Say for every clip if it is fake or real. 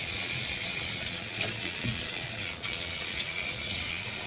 fake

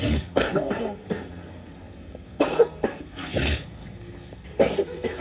fake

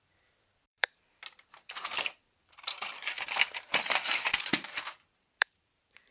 fake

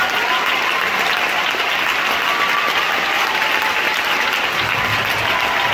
real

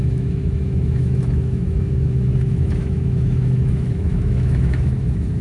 fake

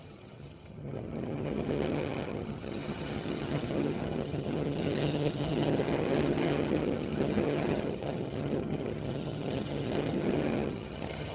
fake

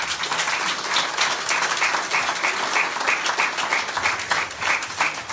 real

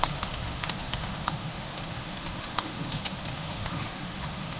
fake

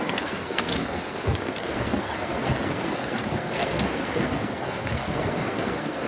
fake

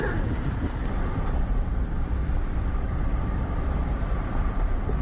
fake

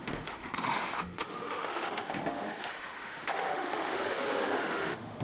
fake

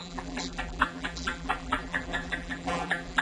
fake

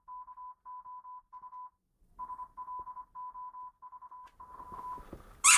real